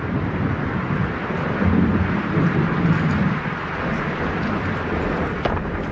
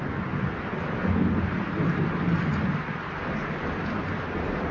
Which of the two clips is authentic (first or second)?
second